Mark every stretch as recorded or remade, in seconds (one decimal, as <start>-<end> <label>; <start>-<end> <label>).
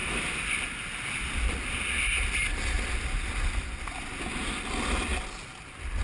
0.0-6.0 recorded